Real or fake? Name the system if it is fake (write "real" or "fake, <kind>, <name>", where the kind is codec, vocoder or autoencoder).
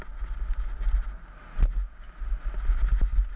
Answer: real